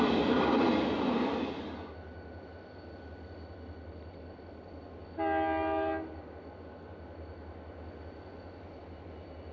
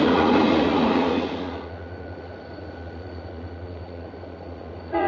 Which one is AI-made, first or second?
second